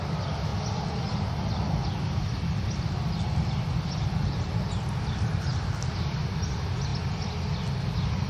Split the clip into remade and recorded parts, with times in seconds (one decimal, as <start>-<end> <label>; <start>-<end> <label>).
0.0-8.3 recorded